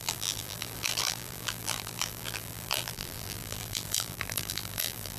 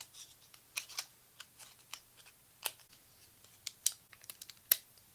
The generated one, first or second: first